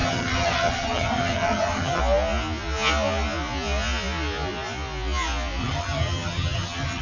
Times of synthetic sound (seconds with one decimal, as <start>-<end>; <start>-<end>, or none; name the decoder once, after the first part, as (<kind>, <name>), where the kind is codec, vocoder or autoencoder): 0.0-2.0 (vocoder, HiFi-GAN); 5.6-7.0